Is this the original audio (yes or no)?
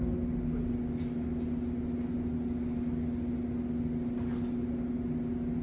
yes